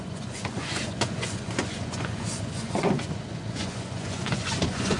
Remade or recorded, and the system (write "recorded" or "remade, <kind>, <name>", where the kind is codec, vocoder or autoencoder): remade, vocoder, Vocos